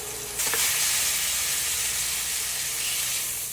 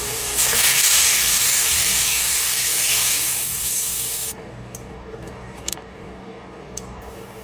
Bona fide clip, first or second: first